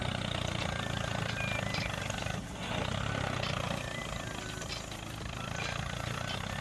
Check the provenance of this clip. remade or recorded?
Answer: recorded